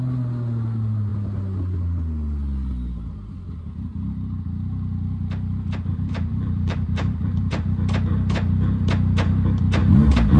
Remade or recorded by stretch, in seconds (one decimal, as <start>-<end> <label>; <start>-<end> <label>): 0.0-5.9 recorded; 5.9-7.4 remade; 7.4-10.4 recorded

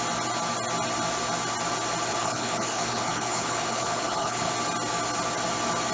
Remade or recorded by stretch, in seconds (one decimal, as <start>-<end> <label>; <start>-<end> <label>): 0.0-2.1 recorded; 2.1-4.5 remade; 4.5-5.9 recorded

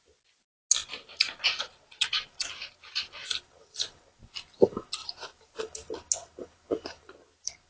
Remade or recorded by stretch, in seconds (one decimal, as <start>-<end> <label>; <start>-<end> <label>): 0.0-3.2 recorded; 3.2-4.0 remade; 4.0-5.0 recorded; 5.0-5.6 remade; 5.6-6.2 recorded; 6.2-7.0 remade; 7.0-7.7 recorded

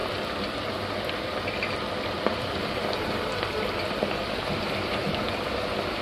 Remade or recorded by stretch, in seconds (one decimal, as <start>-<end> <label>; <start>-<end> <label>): 0.0-6.0 remade

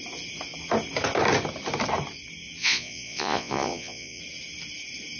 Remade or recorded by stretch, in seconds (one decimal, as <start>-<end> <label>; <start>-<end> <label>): 0.0-2.6 recorded; 2.6-4.2 remade; 4.2-5.2 recorded

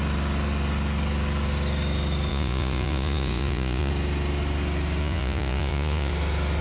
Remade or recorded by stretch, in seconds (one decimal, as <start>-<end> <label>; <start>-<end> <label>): 0.0-2.3 recorded; 2.3-3.9 remade; 3.9-5.0 recorded; 5.0-6.1 remade; 6.1-6.6 recorded

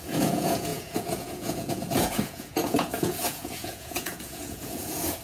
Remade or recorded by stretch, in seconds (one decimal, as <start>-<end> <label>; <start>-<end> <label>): 0.0-5.2 remade